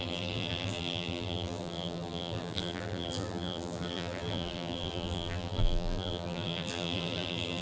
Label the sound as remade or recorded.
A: remade